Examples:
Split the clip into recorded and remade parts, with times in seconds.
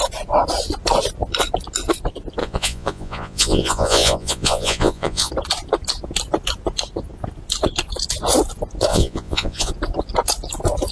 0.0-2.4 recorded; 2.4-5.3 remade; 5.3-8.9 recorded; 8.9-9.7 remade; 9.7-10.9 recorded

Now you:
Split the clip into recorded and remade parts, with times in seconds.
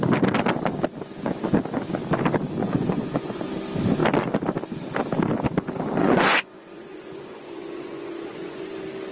0.0-2.6 recorded; 2.6-3.4 remade; 3.4-6.0 recorded; 6.0-8.7 remade; 8.7-9.1 recorded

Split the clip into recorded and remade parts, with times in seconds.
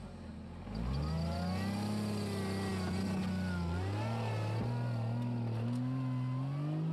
0.0-6.9 recorded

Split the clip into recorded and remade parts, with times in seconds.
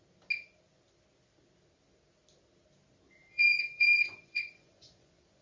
0.0-3.3 recorded; 3.3-5.4 remade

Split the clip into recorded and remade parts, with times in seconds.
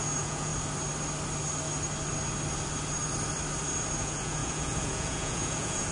0.0-0.5 remade; 0.5-4.0 recorded; 4.0-5.9 remade